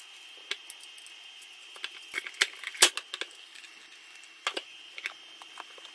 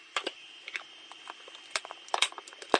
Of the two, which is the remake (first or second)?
second